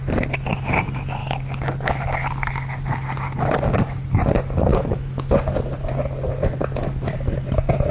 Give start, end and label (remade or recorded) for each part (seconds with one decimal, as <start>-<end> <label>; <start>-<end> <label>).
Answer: 0.0-4.7 recorded; 4.7-5.3 remade; 5.3-7.9 recorded